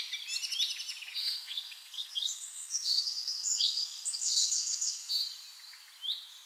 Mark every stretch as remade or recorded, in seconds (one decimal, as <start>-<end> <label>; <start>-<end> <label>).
0.0-1.2 recorded; 1.2-5.1 remade; 5.1-6.5 recorded